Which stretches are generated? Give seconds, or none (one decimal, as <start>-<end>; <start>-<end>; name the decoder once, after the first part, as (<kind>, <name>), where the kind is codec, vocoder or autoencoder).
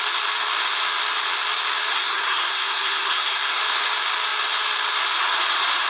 1.9-3.6 (codec, SNAC)